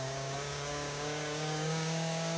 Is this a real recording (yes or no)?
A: no